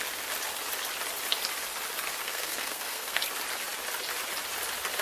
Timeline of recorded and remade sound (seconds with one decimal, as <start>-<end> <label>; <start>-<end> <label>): 0.0-2.2 recorded; 2.2-3.2 remade; 3.2-5.0 recorded